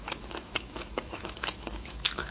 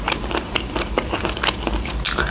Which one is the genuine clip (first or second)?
second